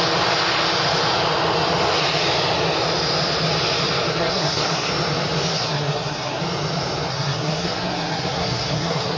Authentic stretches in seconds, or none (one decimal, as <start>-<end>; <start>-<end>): 0.0-4.1; 4.9-5.5; 6.4-7.1